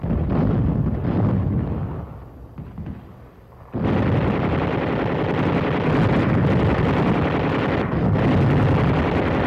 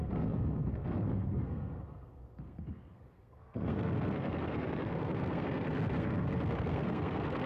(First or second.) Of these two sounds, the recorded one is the first